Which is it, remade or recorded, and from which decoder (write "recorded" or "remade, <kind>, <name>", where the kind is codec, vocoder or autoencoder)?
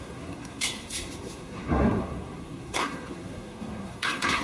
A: remade, codec, SNAC